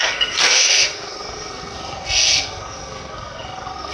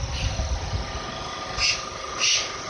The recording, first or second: second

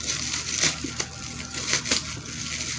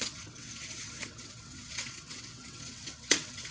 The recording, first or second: first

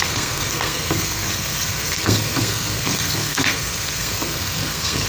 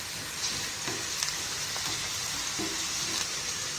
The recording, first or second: second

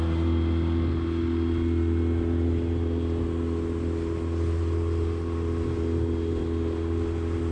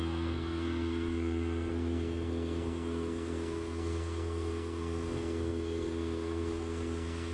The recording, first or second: first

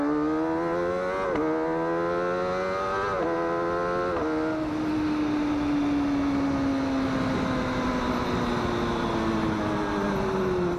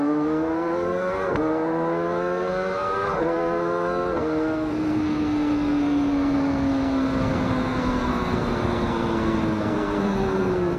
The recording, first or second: first